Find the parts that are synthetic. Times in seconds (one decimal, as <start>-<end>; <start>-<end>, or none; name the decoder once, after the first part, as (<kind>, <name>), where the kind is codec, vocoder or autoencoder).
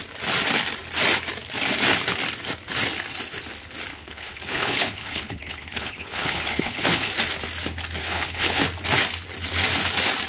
3.9-7.1 (codec, HILCodec); 8.0-8.6